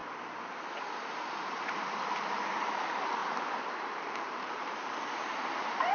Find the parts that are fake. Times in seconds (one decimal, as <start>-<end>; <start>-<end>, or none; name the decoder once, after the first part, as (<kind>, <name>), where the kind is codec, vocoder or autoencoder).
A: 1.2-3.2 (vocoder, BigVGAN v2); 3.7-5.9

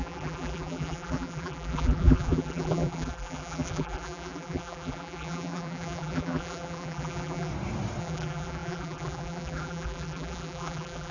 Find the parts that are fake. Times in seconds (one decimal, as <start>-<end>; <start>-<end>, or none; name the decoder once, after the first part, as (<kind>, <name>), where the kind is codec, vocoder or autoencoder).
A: 0.0-7.5 (vocoder, BigVGAN v2); 8.0-11.1

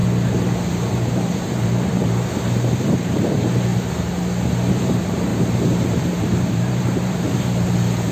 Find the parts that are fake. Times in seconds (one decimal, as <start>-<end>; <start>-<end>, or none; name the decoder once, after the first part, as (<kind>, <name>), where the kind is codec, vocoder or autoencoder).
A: 0.7-3.7 (vocoder, BigVGAN v2); 4.7-5.3; 6.0-8.1

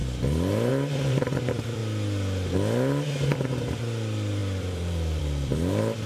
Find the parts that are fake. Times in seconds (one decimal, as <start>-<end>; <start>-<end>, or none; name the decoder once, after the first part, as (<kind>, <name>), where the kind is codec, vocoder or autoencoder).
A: 0.7-1.8 (vocoder, BigVGAN v2); 3.3-6.1